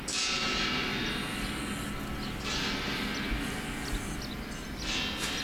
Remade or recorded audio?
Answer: recorded